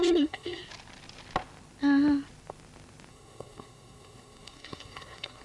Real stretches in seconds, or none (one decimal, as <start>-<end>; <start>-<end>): 0.6-3.1